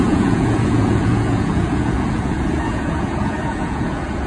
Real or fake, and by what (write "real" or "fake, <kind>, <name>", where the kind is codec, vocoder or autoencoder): fake, vocoder, Vocos